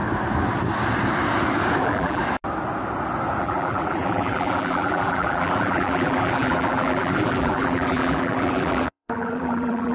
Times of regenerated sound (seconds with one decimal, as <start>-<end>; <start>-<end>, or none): 1.8-2.2; 3.4-9.9